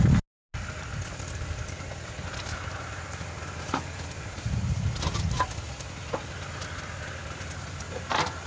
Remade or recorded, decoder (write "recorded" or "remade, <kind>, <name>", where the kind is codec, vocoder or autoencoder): recorded